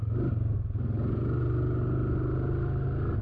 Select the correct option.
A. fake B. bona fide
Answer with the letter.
B